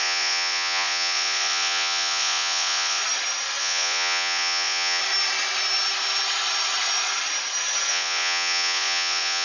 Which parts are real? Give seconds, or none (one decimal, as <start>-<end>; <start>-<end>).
3.0-3.6; 5.0-7.9